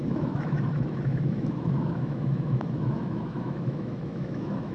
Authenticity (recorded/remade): remade